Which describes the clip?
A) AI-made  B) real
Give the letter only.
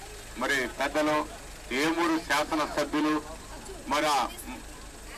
B